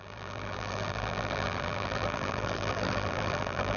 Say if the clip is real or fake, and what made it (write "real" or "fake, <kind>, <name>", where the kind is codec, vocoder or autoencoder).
fake, vocoder, BigVGAN v2